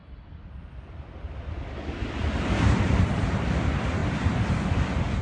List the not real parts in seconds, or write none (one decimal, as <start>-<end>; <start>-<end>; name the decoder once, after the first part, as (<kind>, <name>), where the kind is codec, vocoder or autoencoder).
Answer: none